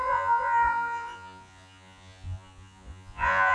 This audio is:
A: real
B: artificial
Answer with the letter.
B